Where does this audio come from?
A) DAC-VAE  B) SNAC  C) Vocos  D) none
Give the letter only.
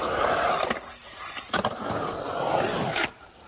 D